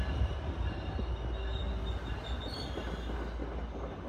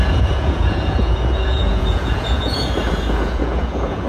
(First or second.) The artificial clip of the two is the second